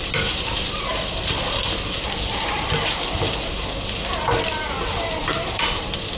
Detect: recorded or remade remade